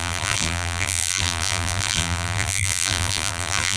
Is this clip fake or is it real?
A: fake